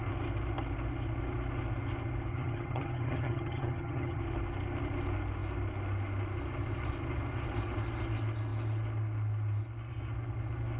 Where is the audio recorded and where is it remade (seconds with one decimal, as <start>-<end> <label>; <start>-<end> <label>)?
0.0-2.3 recorded; 2.3-4.2 remade; 4.2-10.8 recorded